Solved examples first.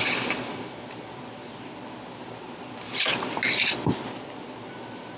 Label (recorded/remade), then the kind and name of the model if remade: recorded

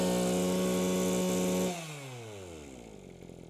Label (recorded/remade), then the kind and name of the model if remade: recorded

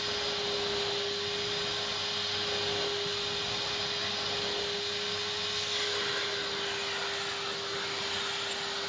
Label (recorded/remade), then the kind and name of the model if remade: recorded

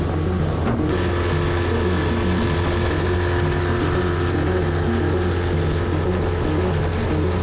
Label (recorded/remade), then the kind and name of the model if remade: recorded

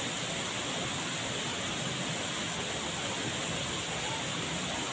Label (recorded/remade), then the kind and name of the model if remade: recorded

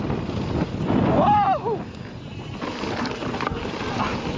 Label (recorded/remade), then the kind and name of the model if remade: recorded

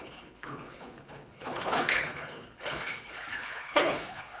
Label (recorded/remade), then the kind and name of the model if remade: remade, codec, HILCodec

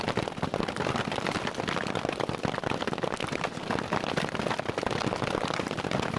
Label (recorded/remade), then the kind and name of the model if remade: recorded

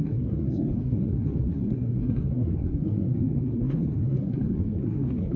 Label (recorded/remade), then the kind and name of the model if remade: remade, codec, SNAC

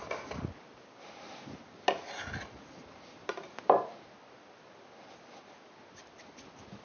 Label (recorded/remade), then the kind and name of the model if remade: recorded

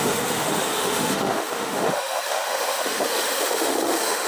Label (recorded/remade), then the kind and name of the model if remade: remade, autoencoder, DAC-VAE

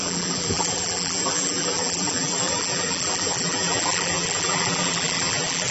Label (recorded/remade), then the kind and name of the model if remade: remade, vocoder, BigVGAN v2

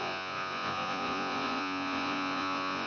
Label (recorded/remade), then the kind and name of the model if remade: remade, vocoder, Vocos